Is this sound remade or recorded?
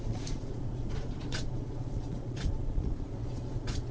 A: remade